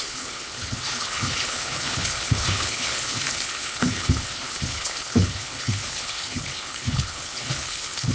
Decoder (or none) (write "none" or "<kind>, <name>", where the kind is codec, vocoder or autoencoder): codec, HILCodec